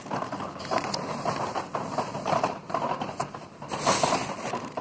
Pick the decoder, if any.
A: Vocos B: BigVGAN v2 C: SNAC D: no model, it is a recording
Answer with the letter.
D